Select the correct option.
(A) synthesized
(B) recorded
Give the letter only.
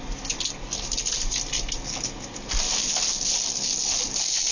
B